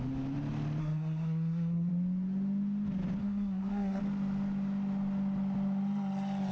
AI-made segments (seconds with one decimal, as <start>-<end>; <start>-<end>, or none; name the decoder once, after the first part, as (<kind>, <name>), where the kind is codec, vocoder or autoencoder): 0.8-1.9 (codec, SNAC); 3.2-4.0